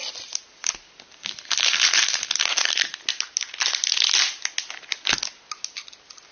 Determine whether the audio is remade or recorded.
recorded